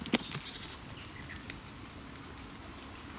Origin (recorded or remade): recorded